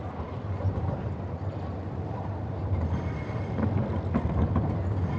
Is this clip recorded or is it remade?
remade